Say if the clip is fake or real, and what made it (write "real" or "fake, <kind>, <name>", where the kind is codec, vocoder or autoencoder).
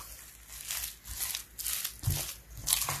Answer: real